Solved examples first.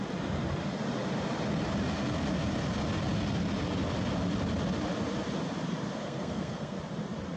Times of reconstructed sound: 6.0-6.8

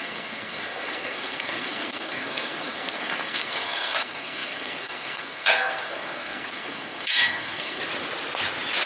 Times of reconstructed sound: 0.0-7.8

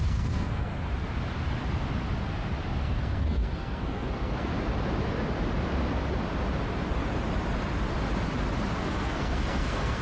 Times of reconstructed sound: 0.0-0.7; 2.8-4.5; 8.8-10.0